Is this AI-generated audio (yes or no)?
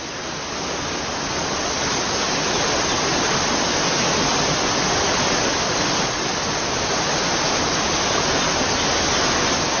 no